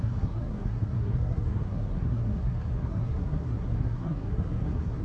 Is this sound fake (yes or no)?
yes